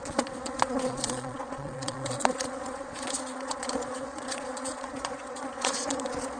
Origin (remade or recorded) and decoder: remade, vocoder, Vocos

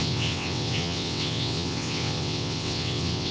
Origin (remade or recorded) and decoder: remade, vocoder, WaveNeXt